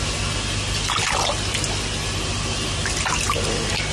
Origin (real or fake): real